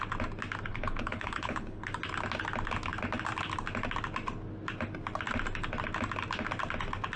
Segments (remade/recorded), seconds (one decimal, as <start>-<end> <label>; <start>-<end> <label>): 0.0-0.7 recorded; 0.7-1.9 remade; 1.9-7.2 recorded